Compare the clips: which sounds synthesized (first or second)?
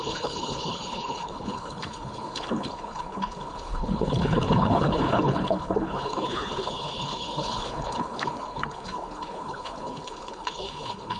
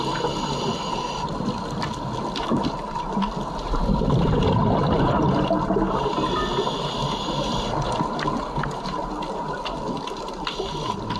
first